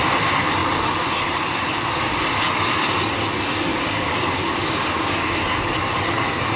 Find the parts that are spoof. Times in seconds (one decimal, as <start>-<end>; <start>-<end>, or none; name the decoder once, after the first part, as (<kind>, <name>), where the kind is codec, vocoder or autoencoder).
3.7-5.4 (codec, DAC)